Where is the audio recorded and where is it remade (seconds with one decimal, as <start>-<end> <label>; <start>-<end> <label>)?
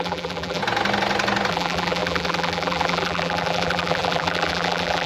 0.0-0.6 remade; 0.6-1.5 recorded; 1.5-5.1 remade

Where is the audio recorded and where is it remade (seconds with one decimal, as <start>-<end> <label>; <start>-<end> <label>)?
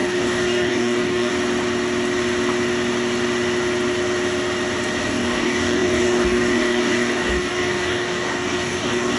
0.0-1.3 remade; 1.3-5.0 recorded; 5.0-9.2 remade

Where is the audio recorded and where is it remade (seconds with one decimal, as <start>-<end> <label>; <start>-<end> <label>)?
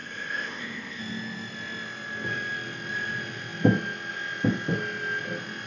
0.0-1.0 remade; 1.0-5.7 recorded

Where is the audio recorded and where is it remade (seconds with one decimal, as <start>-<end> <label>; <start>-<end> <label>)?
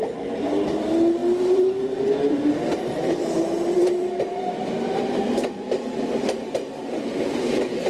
0.0-1.2 recorded; 1.2-5.3 remade; 5.3-7.9 recorded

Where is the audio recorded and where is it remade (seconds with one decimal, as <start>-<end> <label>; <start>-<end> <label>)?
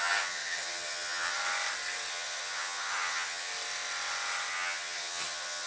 0.0-1.4 remade; 1.4-2.1 recorded; 2.1-3.5 remade; 3.5-4.5 recorded; 4.5-5.7 remade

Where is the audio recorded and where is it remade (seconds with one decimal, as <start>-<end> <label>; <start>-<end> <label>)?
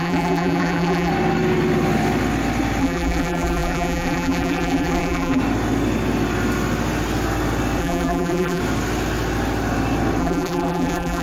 0.0-1.1 remade; 1.1-2.8 recorded; 2.8-5.4 remade; 5.4-7.8 recorded; 7.8-8.6 remade; 8.6-10.2 recorded; 10.2-11.2 remade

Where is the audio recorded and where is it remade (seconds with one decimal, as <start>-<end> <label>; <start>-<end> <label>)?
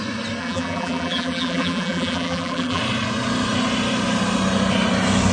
0.0-0.4 recorded; 0.4-2.8 remade; 2.8-5.3 recorded